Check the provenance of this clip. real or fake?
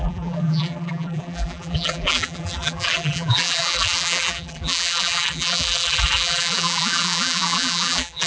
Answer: fake